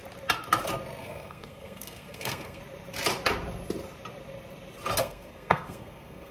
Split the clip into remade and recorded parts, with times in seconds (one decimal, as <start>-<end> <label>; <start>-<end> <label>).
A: 0.0-1.0 recorded; 1.0-2.6 remade; 2.6-5.0 recorded; 5.0-6.3 remade